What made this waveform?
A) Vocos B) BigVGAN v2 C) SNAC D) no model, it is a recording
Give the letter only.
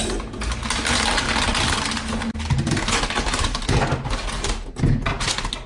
D